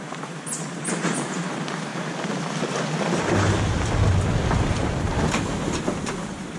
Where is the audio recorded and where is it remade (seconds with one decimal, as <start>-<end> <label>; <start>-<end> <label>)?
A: 0.0-1.9 remade; 1.9-4.7 recorded; 4.7-6.6 remade